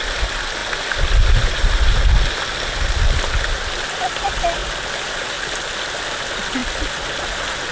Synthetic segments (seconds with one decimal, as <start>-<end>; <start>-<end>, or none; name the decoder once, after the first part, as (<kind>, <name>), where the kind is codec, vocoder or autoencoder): none